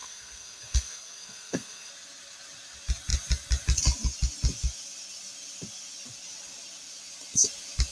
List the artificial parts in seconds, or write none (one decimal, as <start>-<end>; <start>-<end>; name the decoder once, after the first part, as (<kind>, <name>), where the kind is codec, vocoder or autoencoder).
0.0-1.9 (codec, SNAC)